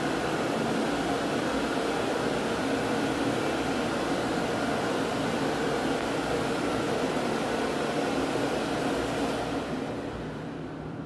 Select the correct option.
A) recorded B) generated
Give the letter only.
B